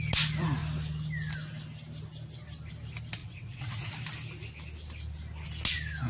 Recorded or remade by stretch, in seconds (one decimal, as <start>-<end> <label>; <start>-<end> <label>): 0.0-3.2 recorded; 3.2-3.9 remade; 3.9-6.1 recorded